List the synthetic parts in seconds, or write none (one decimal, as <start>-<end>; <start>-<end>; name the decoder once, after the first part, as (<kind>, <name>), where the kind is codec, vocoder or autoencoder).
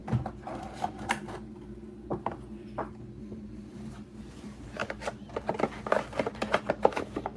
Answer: 3.7-4.8 (vocoder, BigVGAN v2); 6.3-7.4